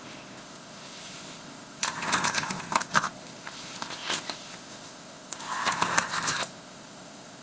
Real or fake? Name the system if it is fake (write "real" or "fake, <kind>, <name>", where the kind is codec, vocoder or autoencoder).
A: fake, codec, ZipCodec